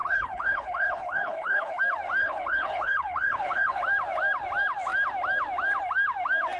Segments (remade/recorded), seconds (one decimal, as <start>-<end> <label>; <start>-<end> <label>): 0.0-1.8 remade; 1.8-2.2 recorded; 2.2-3.8 remade; 3.8-6.6 recorded